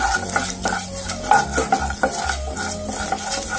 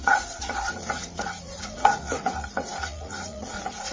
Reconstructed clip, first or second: second